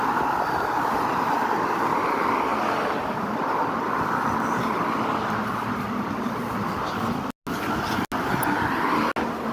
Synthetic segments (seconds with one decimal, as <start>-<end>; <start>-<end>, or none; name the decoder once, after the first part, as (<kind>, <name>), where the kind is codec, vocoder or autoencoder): none